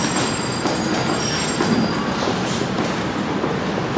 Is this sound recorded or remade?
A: remade